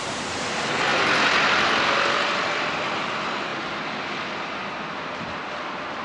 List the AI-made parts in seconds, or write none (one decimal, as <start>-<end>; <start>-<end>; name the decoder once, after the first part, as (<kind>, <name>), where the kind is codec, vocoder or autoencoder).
4.6-5.4 (vocoder, BigVGAN v2)